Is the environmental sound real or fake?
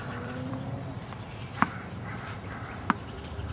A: fake